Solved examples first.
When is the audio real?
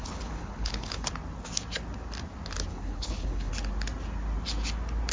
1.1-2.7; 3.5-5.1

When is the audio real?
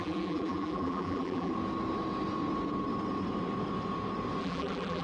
1.5-4.4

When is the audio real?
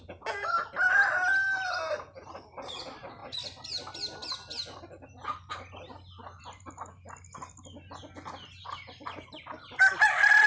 0.0-10.5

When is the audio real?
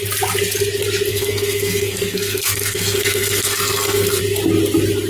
0.0-1.1; 4.2-5.1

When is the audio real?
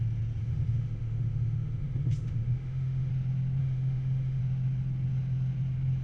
0.0-0.4; 3.1-3.6; 4.4-6.0